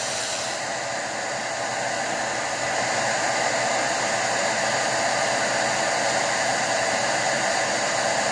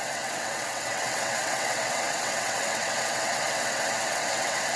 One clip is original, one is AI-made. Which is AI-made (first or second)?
second